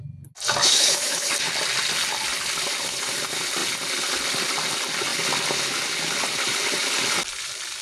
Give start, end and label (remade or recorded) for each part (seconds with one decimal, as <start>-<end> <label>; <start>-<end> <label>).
0.0-0.6 recorded; 0.6-1.3 remade; 1.3-7.8 recorded